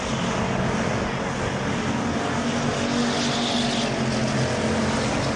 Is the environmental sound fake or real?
real